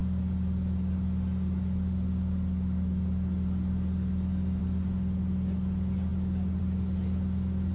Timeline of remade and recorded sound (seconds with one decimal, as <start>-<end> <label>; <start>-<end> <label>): 0.0-7.7 recorded